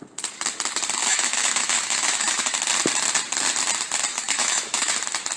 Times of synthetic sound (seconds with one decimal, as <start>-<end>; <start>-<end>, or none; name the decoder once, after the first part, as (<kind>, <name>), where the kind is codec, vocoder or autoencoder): 1.0-2.6 (autoencoder, DAC-VAE); 4.1-4.9